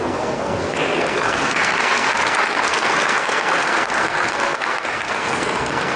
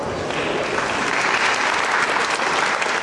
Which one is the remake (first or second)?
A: first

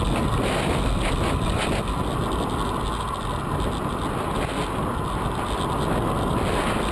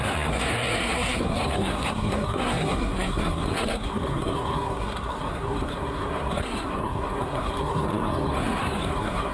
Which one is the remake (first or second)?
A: second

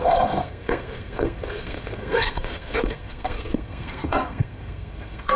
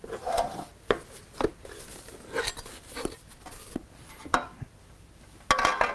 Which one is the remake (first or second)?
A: first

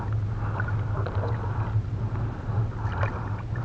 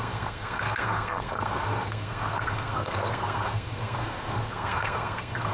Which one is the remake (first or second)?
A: second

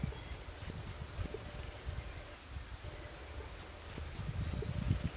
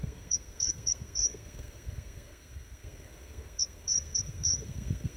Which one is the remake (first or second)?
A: second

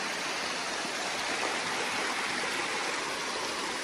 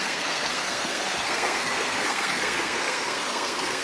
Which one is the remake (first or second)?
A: second